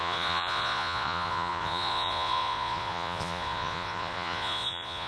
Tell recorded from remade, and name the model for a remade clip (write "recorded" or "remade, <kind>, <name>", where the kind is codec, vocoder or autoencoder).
remade, vocoder, Vocos